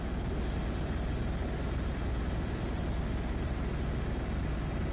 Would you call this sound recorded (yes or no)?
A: yes